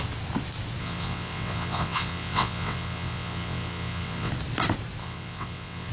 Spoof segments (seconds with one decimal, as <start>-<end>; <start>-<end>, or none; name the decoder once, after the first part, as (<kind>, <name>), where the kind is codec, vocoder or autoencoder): 0.8-4.3 (vocoder, WaveNeXt); 5.0-5.9